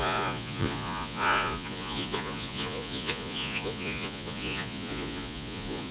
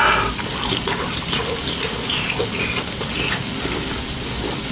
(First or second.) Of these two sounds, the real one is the second